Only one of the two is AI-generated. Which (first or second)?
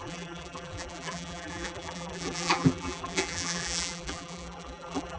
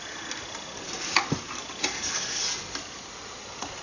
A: first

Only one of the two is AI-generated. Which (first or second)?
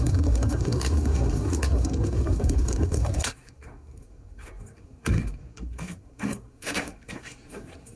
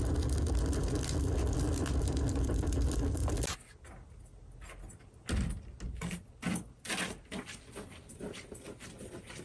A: first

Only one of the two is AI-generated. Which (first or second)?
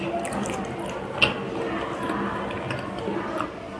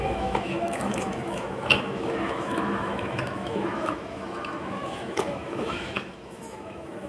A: second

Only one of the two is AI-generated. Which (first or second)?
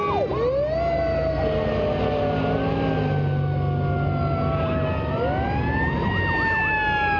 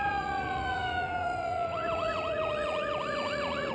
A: second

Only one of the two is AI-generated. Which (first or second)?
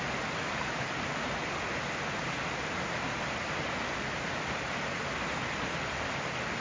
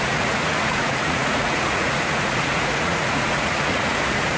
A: second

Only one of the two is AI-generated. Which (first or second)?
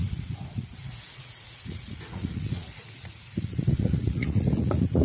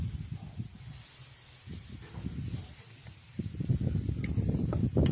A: first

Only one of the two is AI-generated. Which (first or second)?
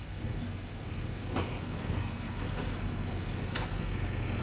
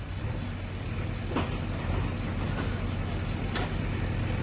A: first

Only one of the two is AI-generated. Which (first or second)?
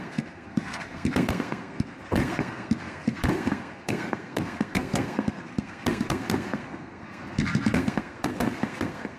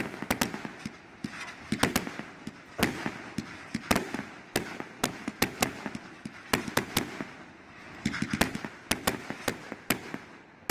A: first